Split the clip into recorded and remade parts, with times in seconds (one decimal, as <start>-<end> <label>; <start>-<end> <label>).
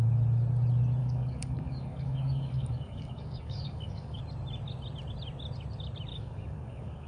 0.0-1.0 recorded; 1.0-4.2 remade; 4.2-6.1 recorded; 6.1-7.1 remade